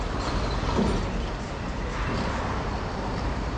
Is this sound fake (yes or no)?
no